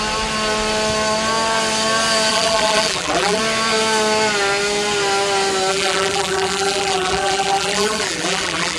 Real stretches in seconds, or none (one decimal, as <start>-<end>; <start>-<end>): 0.0-2.3; 3.4-5.7